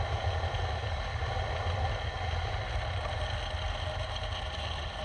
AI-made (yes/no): no